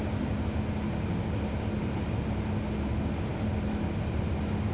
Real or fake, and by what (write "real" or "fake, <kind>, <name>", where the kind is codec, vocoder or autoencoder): real